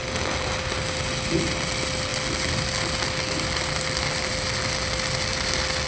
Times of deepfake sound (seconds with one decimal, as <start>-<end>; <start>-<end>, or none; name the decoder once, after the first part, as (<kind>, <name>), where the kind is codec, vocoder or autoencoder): none

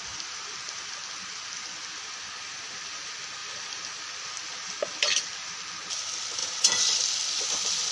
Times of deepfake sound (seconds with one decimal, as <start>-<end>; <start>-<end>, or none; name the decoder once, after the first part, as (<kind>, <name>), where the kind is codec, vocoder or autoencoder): 3.4-5.6 (vocoder, BigVGAN v2); 6.4-7.9

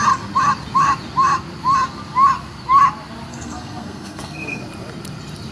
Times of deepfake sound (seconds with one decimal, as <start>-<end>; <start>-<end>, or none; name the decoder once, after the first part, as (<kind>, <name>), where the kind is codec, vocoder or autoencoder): 3.3-4.6 (codec, SNAC)

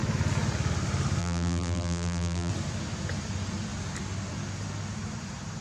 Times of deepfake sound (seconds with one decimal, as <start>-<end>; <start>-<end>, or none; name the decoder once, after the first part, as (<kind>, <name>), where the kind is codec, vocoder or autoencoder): 1.2-2.5 (vocoder, BigVGAN v2)

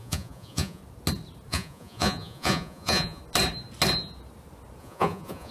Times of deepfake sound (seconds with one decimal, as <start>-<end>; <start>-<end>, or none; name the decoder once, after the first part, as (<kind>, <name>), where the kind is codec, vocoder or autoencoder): 0.0-0.8 (vocoder, Vocos); 1.5-3.2; 4.8-5.5

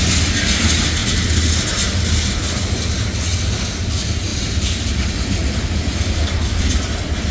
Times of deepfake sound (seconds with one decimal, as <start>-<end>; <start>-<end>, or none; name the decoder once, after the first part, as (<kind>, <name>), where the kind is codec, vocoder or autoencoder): 4.3-5.6 (vocoder, BigVGAN v2)

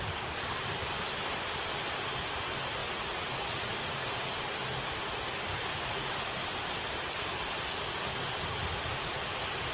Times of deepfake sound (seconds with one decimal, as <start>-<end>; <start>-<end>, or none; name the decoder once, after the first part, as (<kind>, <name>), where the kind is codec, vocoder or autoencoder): 2.8-4.0 (vocoder, Vocos); 5.7-6.3

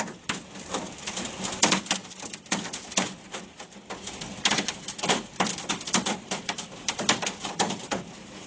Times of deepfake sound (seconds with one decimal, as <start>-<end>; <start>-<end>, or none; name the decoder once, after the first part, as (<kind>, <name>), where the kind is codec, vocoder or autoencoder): 2.0-3.4 (vocoder, BigVGAN v2); 4.3-7.6